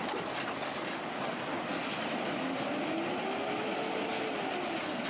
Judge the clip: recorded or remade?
recorded